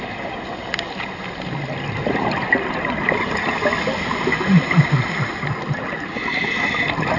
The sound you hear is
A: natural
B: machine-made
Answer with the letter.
A